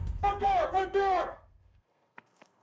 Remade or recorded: remade